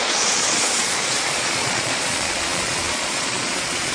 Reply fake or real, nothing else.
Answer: fake